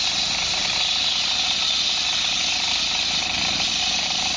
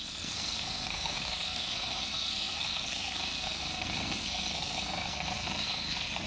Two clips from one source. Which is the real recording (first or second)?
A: first